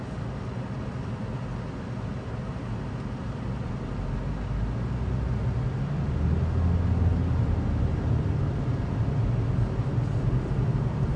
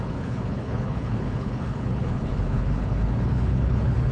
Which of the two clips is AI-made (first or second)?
second